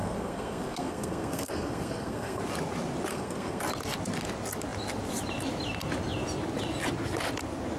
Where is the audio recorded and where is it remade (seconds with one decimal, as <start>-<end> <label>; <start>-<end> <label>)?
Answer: 0.0-2.4 remade; 2.4-3.1 recorded; 3.1-3.6 remade; 3.6-7.8 recorded

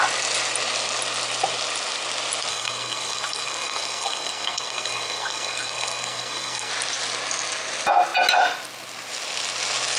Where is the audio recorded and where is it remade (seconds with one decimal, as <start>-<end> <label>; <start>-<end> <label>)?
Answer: 0.0-2.5 recorded; 2.5-6.7 remade; 6.7-10.0 recorded

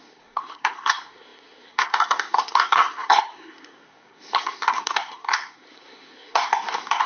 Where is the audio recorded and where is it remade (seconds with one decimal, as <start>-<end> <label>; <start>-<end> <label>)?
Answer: 0.0-7.1 remade

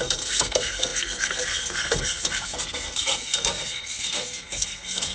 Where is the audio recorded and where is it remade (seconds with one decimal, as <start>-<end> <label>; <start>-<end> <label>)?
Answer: 0.0-5.1 remade

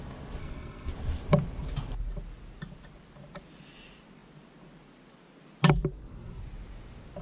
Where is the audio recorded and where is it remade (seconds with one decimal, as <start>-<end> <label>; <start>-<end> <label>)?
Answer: 0.0-0.4 recorded; 0.4-0.9 remade; 0.9-7.2 recorded

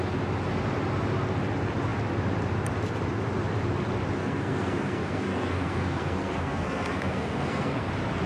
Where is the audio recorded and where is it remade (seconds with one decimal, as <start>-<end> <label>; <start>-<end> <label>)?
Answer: 0.0-4.2 recorded; 4.2-7.9 remade; 7.9-8.3 recorded